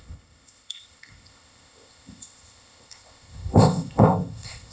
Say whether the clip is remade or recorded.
remade